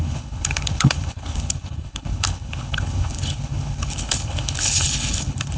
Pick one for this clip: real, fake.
fake